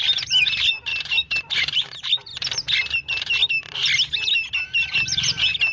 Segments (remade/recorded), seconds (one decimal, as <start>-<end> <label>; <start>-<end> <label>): 0.0-2.3 remade; 2.3-3.0 recorded; 3.0-3.8 remade; 3.8-4.5 recorded; 4.5-5.7 remade